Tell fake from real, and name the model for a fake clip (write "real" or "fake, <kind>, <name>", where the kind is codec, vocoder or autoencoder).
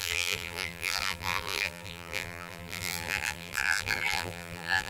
fake, vocoder, BigVGAN v2